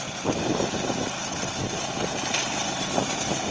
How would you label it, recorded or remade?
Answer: recorded